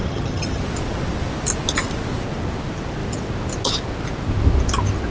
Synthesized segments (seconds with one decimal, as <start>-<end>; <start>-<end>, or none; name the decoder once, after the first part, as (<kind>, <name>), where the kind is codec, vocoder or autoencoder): 0.0-0.6 (vocoder, HiFi-GAN)